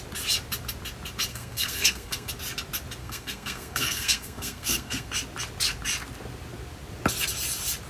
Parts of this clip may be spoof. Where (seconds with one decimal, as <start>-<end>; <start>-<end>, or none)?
1.3-2.3; 3.0-5.1